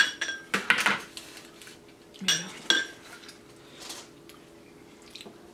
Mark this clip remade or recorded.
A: recorded